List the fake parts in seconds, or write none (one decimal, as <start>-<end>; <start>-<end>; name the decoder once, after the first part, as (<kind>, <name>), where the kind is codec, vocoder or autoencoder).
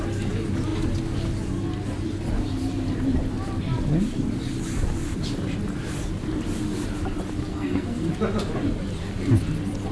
7.5-8.1 (codec, SNAC)